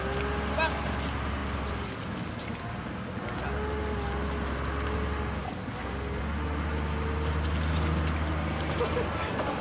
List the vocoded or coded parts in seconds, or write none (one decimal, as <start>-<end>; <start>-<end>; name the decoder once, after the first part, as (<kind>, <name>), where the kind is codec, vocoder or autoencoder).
none